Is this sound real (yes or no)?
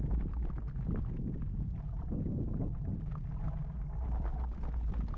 yes